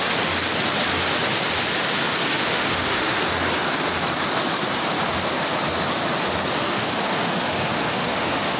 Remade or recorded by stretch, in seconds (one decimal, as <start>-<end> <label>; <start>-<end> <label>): 0.0-2.3 recorded; 2.3-3.2 remade; 3.2-6.6 recorded; 6.6-8.6 remade